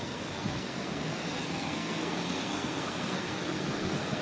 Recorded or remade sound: remade